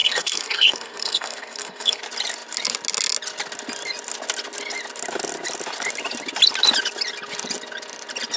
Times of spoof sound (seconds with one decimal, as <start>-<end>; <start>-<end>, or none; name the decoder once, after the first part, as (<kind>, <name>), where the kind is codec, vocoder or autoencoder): 0.0-2.0 (codec, SNAC)